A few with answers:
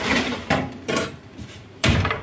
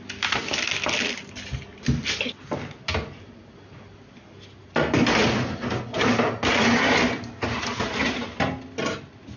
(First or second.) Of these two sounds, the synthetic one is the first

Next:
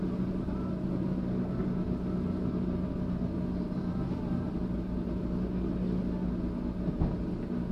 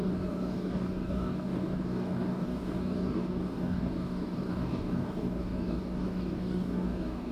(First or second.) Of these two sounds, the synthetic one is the second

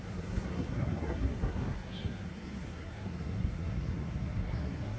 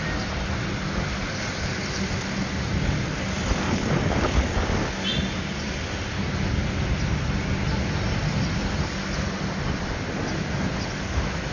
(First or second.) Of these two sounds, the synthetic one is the first